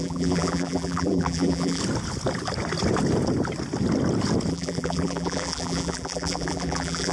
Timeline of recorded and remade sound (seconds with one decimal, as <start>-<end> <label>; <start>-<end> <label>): 0.0-1.8 remade; 1.8-4.5 recorded; 4.5-7.1 remade